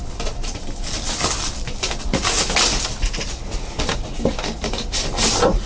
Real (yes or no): yes